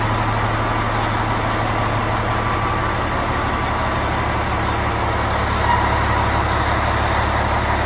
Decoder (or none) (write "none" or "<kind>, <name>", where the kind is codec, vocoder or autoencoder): none